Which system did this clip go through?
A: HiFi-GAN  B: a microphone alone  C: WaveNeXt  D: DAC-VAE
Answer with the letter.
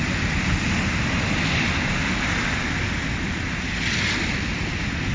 B